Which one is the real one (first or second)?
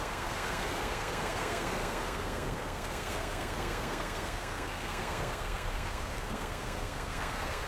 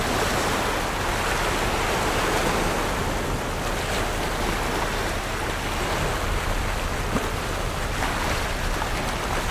second